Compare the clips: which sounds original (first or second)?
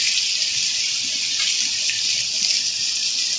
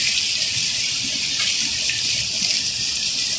first